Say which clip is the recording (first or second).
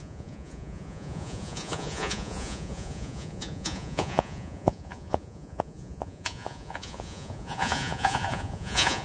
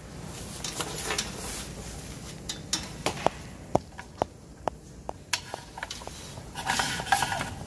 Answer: second